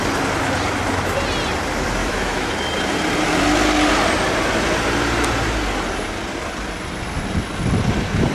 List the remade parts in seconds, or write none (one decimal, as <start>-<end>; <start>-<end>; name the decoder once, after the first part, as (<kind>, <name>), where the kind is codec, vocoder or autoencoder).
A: 2.0-2.5 (autoencoder, DAC-VAE)